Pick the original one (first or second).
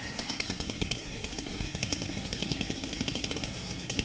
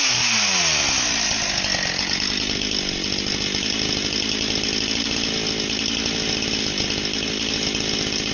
second